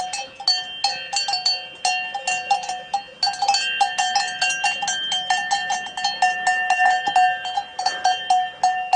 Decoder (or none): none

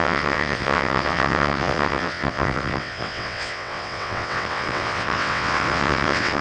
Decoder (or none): vocoder, WaveNeXt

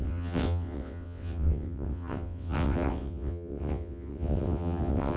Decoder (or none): vocoder, WaveNeXt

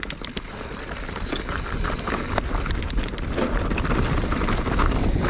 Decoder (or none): none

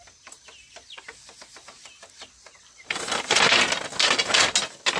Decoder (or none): none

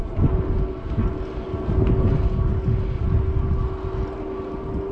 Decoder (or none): none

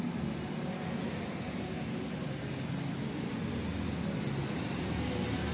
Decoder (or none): none